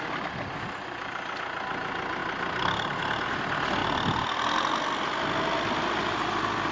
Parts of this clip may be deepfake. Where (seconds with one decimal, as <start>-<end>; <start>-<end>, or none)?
3.8-5.0